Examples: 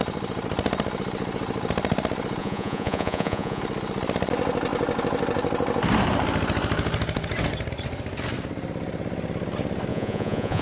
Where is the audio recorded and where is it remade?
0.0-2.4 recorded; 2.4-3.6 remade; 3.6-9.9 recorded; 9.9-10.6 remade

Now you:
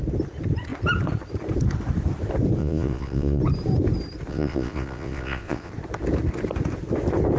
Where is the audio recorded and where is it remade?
0.0-2.6 recorded; 2.6-3.4 remade; 3.4-4.3 recorded; 4.3-5.7 remade; 5.7-7.4 recorded

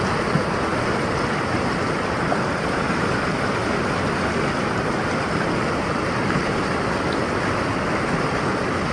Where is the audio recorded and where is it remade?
0.0-8.9 recorded

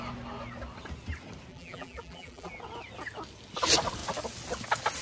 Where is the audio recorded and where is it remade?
0.0-1.5 recorded; 1.5-2.5 remade; 2.5-5.0 recorded